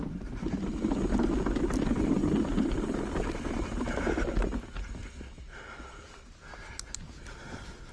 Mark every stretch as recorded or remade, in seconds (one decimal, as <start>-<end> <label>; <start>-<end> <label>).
0.0-7.9 recorded